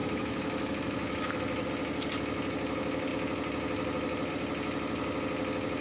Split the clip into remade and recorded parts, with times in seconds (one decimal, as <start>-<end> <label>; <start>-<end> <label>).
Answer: 0.0-1.7 remade; 1.7-5.8 recorded